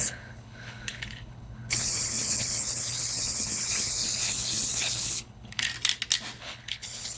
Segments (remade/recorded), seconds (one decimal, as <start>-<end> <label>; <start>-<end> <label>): 0.0-5.7 remade; 5.7-6.4 recorded; 6.4-7.2 remade